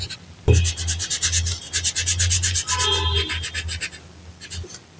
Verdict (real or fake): real